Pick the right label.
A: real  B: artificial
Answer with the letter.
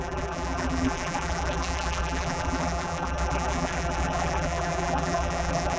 B